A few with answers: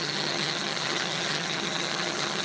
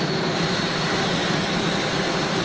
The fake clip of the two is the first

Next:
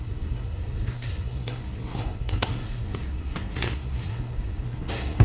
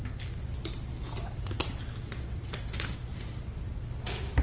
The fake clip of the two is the first